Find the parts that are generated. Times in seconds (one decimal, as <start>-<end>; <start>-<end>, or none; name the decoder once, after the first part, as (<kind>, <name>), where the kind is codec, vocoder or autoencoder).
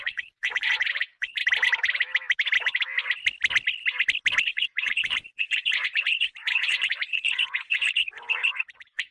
0.0-1.4 (vocoder, Vocos); 4.4-9.1